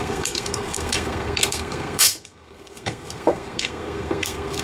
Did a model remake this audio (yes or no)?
yes